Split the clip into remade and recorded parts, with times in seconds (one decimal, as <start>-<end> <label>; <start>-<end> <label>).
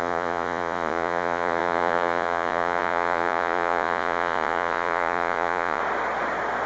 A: 0.0-5.8 remade; 5.8-6.7 recorded